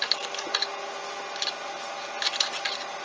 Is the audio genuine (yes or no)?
yes